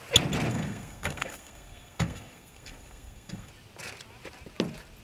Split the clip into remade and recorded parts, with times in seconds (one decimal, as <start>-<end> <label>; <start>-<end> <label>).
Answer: 0.0-0.5 recorded; 0.5-3.5 remade; 3.5-5.0 recorded